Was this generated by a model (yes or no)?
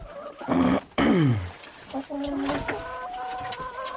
no